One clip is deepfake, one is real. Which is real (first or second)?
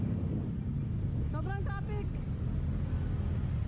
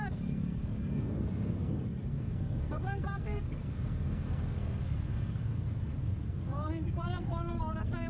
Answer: first